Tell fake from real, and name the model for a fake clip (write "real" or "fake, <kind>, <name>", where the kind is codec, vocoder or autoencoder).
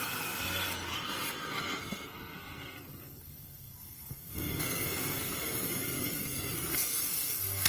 fake, codec, SNAC